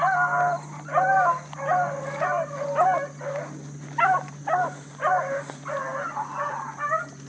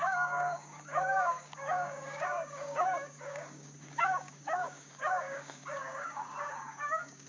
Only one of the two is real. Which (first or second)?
first